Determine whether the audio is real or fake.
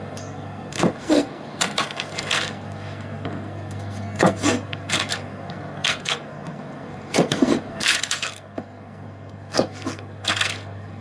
fake